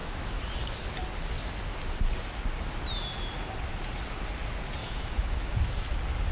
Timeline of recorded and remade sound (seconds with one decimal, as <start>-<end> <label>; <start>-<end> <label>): 0.0-0.5 remade; 0.5-4.8 recorded; 4.8-5.5 remade; 5.5-6.3 recorded